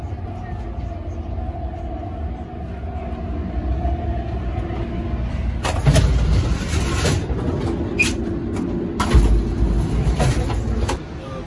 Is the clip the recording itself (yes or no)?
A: yes